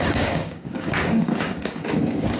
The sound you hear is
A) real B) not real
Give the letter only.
B